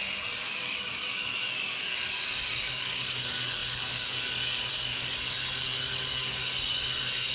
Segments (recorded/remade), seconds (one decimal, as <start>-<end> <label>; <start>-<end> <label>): 0.0-7.3 remade